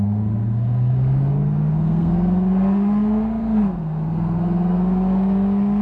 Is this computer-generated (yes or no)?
yes